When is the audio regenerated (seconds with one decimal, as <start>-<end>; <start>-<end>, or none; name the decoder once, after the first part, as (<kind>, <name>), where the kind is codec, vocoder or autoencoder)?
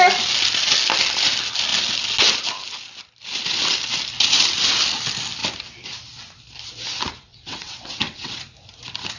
7.3-8.4 (vocoder, WaveNeXt)